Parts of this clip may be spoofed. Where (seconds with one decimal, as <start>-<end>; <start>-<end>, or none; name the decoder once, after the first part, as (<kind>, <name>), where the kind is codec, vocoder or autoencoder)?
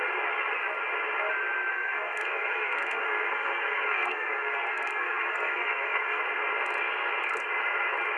1.7-6.2 (codec, SNAC)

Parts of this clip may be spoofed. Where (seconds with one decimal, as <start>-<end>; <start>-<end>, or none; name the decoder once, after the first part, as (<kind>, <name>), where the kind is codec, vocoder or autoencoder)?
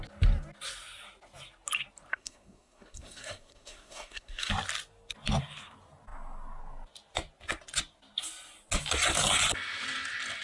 2.1-4.5 (codec, SNAC)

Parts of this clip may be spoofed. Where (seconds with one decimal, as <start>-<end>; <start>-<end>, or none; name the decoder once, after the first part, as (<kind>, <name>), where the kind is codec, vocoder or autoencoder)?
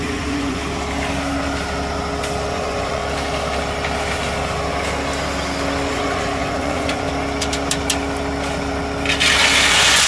0.0-0.6 (vocoder, Vocos); 2.5-3.0; 5.9-7.1; 9.7-10.1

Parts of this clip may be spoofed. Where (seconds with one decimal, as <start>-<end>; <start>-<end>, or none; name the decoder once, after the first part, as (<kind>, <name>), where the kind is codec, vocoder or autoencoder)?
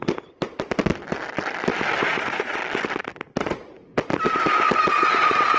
2.0-2.6 (vocoder, Vocos); 3.4-3.9